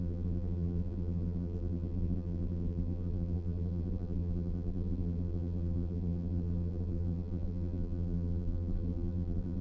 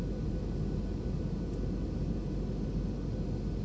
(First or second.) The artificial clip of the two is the first